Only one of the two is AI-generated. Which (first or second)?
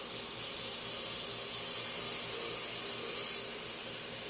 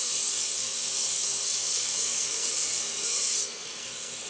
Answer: second